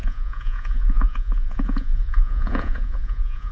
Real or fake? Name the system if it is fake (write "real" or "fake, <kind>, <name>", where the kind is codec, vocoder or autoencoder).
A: fake, vocoder, Vocos